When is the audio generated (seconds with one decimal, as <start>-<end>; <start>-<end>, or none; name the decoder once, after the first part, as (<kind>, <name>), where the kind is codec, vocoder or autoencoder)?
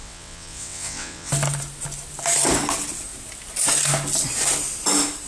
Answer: 0.0-1.3 (vocoder, WaveNeXt)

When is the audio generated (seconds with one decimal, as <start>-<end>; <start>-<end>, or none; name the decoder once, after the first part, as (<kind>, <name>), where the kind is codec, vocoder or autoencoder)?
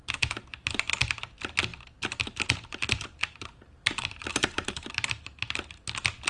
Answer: 1.7-5.5 (vocoder, BigVGAN v2)